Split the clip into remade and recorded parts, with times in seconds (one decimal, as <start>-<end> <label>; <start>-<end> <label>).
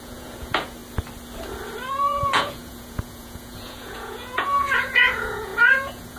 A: 0.0-0.8 remade; 0.8-1.9 recorded; 1.9-6.2 remade